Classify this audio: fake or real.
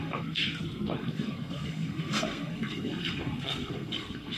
fake